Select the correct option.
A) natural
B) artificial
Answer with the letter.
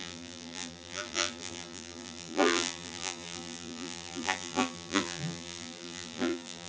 B